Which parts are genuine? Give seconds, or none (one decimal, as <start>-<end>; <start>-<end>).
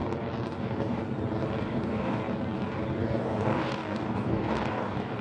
0.0-0.6; 1.0-1.6; 2.2-3.0